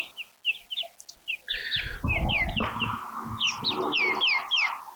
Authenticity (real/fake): real